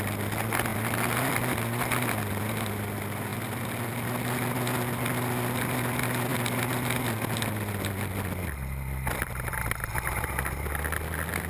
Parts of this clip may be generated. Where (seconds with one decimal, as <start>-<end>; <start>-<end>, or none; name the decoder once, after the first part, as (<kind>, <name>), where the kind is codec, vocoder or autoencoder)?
none